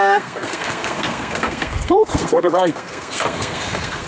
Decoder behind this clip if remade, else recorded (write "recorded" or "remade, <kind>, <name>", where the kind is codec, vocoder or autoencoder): remade, codec, SNAC